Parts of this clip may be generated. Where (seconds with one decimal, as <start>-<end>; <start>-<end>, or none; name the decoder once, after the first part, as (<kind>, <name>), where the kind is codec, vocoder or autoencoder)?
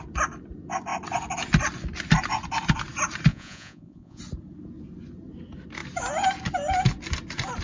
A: 3.3-4.2 (vocoder, Vocos)